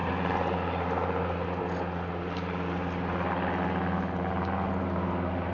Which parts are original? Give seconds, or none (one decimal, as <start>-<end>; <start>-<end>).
0.0-5.5